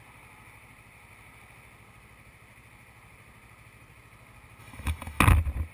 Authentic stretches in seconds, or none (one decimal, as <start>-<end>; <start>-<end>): 0.0-4.6; 5.2-5.7